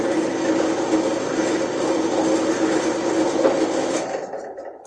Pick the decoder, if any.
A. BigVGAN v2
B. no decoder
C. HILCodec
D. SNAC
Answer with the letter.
B